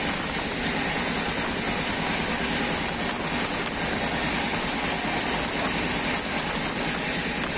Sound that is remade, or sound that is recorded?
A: recorded